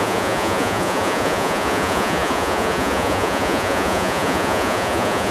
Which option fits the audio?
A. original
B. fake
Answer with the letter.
B